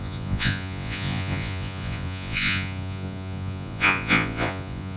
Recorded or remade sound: remade